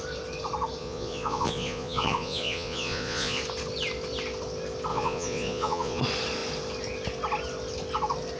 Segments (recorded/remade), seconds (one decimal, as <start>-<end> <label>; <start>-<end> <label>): 0.0-0.8 recorded; 0.8-3.4 remade; 3.4-4.9 recorded; 4.9-6.0 remade; 6.0-8.4 recorded